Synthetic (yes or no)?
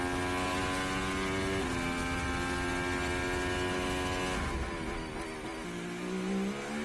no